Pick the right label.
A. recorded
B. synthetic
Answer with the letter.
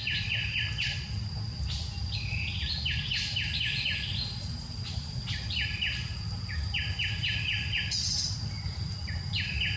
A